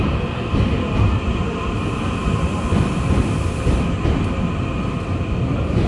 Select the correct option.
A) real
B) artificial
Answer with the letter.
A